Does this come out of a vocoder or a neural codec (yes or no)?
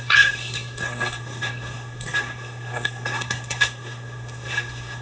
yes